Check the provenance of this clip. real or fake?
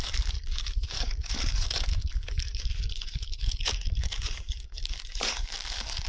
fake